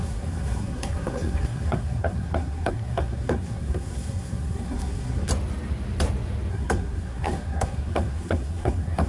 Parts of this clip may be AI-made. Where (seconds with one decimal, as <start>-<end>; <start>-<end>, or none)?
0.0-5.3; 6.5-9.1